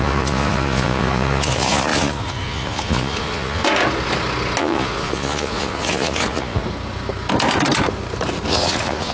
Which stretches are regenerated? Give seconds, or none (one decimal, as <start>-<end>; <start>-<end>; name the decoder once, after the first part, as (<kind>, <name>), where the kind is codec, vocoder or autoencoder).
0.0-3.6 (vocoder, Vocos); 4.6-6.6; 8.5-9.1